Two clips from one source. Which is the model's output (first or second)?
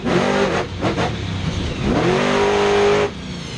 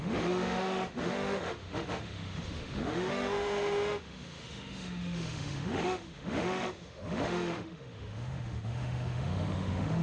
second